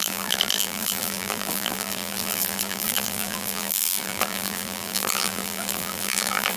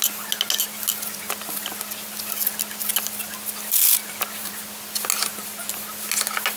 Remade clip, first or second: first